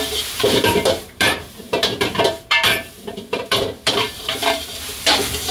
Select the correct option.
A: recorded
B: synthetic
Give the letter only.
B